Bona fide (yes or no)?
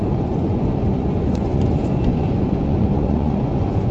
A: no